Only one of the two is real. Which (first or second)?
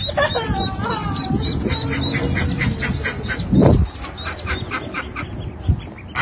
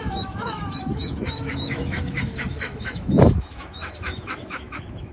first